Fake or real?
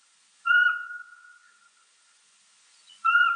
fake